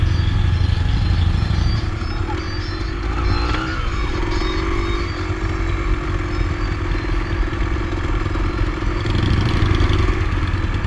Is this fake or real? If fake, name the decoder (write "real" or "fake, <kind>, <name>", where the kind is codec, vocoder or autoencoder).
real